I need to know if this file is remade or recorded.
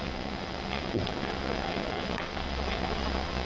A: remade